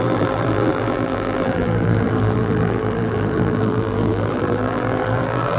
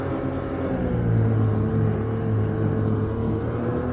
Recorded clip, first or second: second